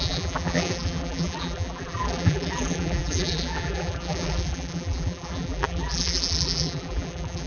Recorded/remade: remade